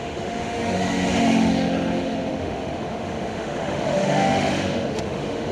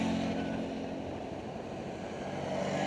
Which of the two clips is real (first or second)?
second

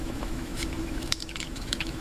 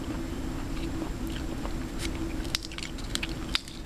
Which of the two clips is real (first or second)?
second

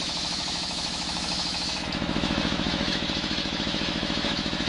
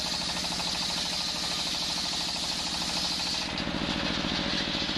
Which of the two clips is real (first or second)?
second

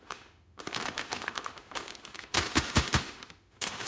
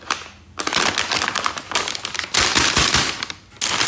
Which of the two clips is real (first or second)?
second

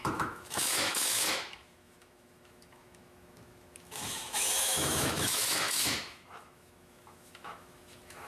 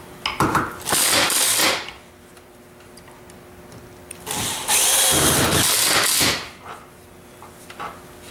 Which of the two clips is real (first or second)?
second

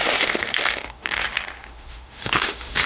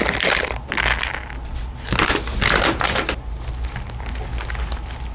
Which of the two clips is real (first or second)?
second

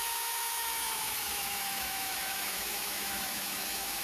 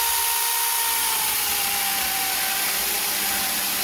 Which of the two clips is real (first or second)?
second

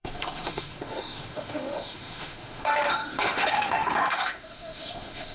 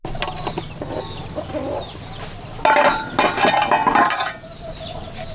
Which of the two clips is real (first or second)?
second